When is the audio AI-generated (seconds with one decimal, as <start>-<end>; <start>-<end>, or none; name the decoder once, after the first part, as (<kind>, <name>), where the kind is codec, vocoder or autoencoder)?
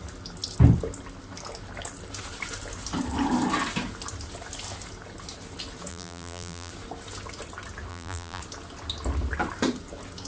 5.9-6.7 (vocoder, BigVGAN v2); 7.9-8.4